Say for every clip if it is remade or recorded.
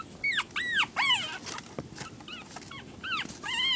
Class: recorded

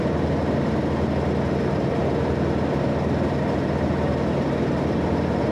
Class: recorded